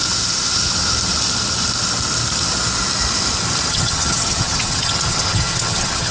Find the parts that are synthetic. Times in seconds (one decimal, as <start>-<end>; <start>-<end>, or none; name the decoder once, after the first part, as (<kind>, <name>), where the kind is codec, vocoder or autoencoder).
3.7-6.1 (vocoder, HiFi-GAN)